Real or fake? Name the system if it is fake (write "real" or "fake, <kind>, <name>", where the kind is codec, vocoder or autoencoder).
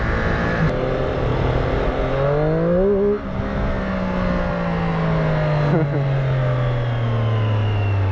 real